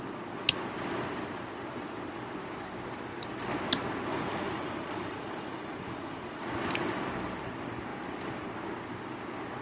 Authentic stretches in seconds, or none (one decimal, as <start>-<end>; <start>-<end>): 0.0-4.1; 6.5-9.6